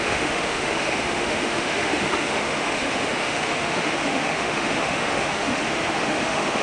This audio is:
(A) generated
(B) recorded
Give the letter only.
A